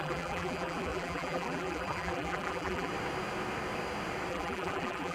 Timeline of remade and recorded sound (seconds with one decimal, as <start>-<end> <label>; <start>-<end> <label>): 0.0-2.9 remade; 2.9-4.3 recorded; 4.3-5.1 remade